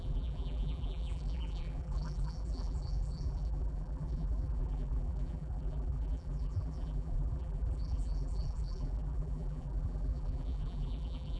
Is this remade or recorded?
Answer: remade